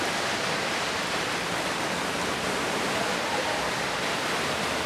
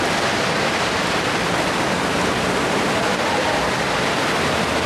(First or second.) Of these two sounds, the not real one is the first